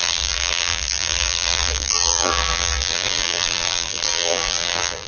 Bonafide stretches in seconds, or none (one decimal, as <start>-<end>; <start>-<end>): none